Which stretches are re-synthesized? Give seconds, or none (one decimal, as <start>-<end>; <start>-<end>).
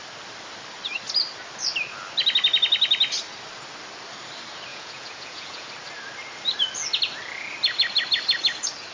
4.7-5.7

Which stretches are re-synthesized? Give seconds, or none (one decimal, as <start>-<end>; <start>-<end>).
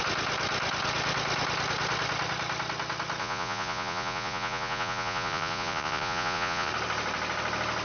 3.2-6.7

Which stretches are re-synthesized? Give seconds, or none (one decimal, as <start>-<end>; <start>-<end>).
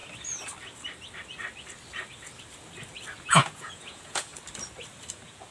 3.3-4.3; 5.1-5.5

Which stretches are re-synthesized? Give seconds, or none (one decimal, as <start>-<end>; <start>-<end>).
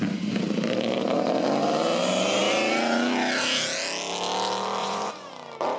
4.8-5.3